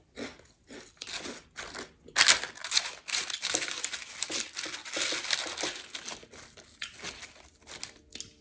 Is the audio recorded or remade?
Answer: recorded